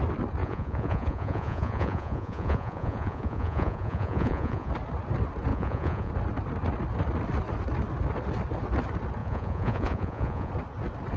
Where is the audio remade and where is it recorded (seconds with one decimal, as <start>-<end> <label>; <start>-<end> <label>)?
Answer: 0.0-0.4 recorded; 0.4-4.7 remade; 4.7-5.5 recorded; 5.5-6.1 remade; 6.1-9.2 recorded; 9.2-10.5 remade; 10.5-11.2 recorded